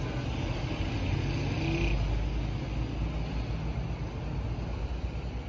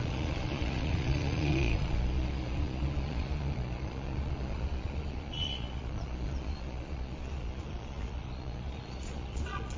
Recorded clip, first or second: first